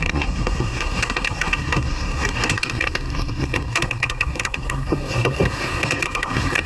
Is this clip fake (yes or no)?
yes